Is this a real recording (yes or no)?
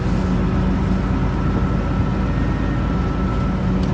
yes